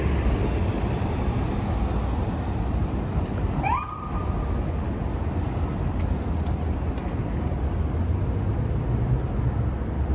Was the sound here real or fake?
real